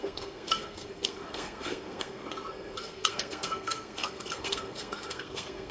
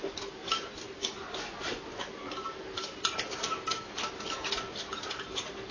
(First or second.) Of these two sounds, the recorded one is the second